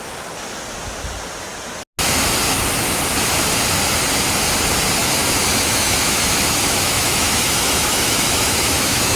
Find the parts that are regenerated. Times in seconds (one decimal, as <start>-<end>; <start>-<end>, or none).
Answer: 5.0-9.2